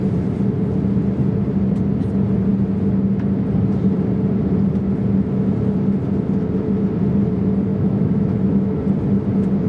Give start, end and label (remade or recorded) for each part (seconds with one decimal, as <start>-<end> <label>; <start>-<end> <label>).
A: 0.0-7.7 recorded; 7.7-8.8 remade; 8.8-9.7 recorded